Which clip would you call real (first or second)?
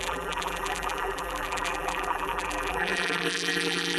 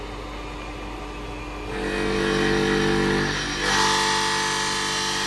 second